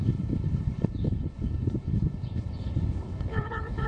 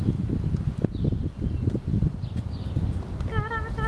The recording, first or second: second